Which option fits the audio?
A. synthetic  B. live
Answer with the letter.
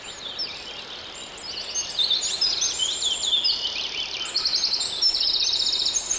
B